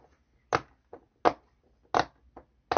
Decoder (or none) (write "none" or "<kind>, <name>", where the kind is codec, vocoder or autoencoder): none